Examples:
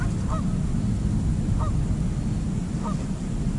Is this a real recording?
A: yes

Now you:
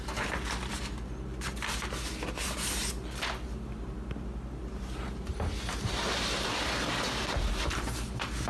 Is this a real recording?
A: yes